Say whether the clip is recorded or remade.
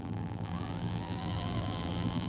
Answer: remade